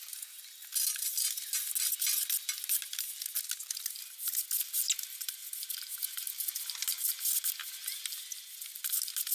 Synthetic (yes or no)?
no